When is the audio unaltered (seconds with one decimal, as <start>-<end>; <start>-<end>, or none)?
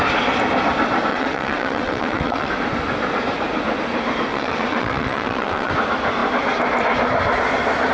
0.0-1.1; 2.5-4.3; 5.7-7.9